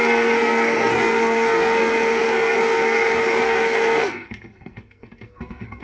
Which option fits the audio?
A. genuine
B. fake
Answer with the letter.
B